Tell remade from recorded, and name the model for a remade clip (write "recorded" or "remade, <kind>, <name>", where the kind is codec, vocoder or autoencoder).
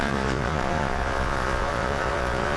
remade, vocoder, Vocos